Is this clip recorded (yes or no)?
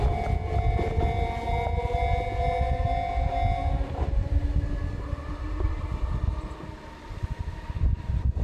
yes